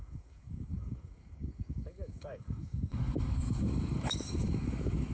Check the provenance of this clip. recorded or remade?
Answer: remade